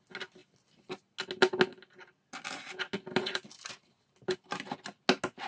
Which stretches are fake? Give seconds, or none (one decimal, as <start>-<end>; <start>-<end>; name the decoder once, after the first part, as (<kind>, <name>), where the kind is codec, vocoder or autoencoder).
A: none